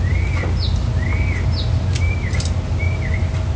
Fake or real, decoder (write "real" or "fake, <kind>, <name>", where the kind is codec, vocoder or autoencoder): real